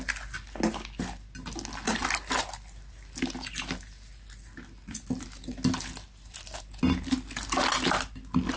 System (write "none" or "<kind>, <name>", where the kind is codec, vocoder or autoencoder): none